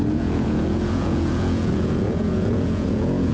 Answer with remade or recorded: remade